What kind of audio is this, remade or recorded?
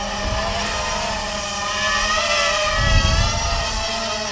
recorded